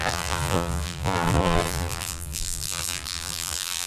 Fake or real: fake